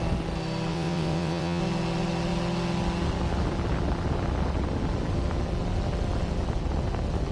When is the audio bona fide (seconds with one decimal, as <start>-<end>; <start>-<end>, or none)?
0.0-0.7; 1.6-7.3